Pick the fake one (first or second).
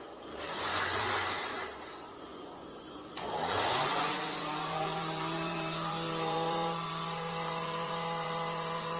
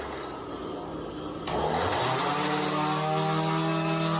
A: first